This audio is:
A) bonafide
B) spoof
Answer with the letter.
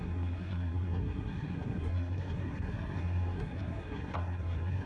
B